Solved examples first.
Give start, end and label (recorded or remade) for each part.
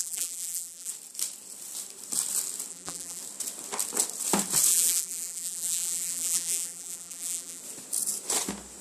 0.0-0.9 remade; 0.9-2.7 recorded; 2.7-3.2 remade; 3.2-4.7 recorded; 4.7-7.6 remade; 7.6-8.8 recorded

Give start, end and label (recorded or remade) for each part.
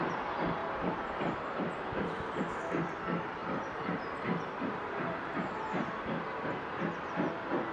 0.0-0.6 recorded; 0.6-2.6 remade; 2.6-3.4 recorded; 3.4-6.6 remade; 6.6-7.7 recorded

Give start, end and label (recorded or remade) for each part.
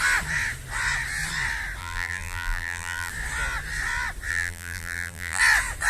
0.0-1.8 recorded; 1.8-3.1 remade; 3.1-4.3 recorded; 4.3-5.4 remade; 5.4-5.9 recorded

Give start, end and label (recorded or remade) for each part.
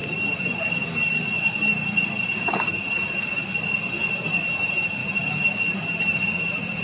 0.0-4.1 recorded; 4.1-5.0 remade; 5.0-5.6 recorded; 5.6-6.8 remade